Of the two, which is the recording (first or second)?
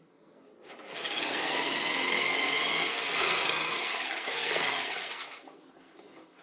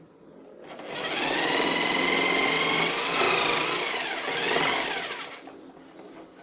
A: second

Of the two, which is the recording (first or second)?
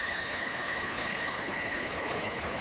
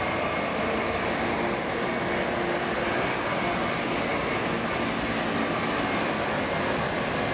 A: second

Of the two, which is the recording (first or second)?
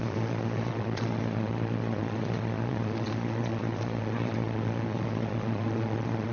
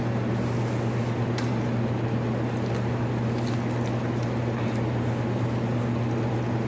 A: second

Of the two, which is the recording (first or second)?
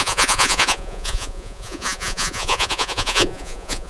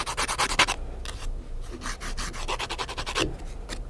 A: second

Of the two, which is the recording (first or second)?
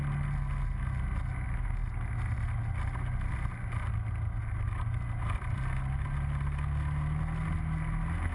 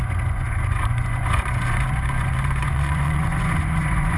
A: first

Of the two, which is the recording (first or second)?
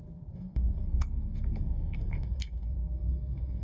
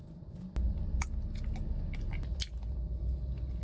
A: second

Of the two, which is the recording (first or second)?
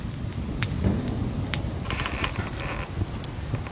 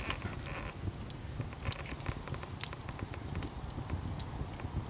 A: second